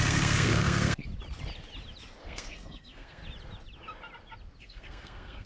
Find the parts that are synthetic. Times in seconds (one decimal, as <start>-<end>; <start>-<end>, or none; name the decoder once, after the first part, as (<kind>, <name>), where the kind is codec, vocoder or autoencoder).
0.0-1.1 (codec, SNAC); 2.2-3.2; 4.6-5.5